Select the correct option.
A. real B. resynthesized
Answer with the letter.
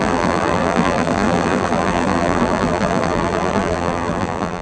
B